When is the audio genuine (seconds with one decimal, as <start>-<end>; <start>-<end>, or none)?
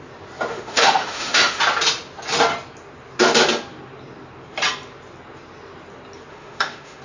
0.0-0.5; 1.6-6.3